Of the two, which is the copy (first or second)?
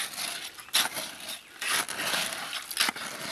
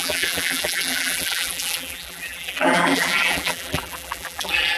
second